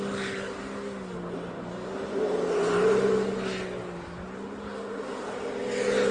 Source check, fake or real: real